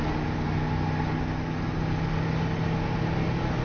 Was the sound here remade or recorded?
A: recorded